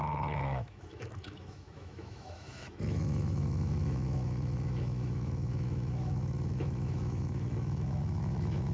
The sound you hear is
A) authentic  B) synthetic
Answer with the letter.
B